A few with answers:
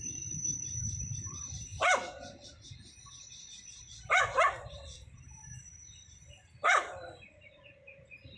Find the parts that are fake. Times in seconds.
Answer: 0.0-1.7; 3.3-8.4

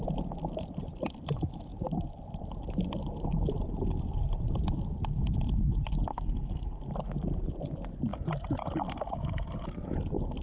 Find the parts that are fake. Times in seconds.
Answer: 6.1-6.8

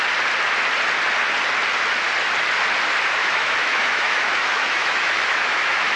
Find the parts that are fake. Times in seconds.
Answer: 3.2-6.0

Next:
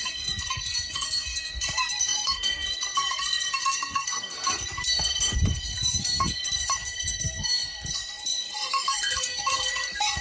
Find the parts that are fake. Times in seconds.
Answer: 0.0-10.2

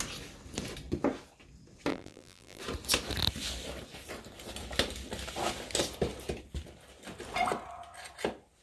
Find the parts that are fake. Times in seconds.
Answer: 1.9-2.6